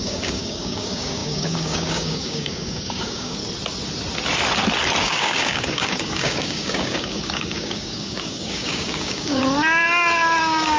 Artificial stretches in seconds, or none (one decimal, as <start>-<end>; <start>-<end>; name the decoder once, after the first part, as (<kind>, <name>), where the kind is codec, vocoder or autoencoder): 0.0-3.4 (codec, DAC); 5.0-9.4; 10.4-10.8